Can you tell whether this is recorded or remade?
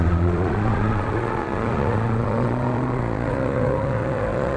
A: remade